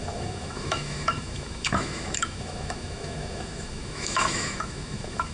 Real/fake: fake